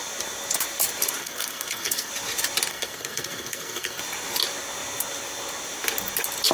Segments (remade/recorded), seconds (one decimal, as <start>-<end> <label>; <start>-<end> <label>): 0.0-1.2 recorded; 1.2-2.1 remade; 2.1-2.7 recorded; 2.7-4.0 remade; 4.0-6.5 recorded